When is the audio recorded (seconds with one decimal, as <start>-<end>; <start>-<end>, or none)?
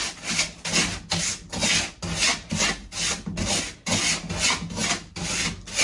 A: 0.0-5.8